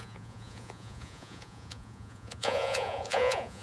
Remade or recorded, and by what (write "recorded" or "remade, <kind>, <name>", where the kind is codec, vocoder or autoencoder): remade, vocoder, Vocos